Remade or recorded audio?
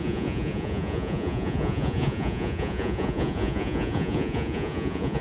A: remade